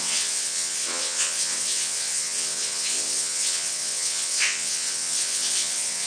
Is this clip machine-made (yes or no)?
yes